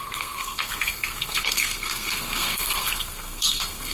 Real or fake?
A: fake